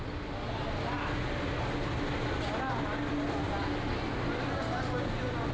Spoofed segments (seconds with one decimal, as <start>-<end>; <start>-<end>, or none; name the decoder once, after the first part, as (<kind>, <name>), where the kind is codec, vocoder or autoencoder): none